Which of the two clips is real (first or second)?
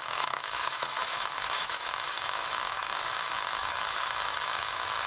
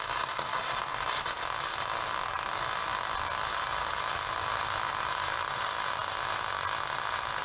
second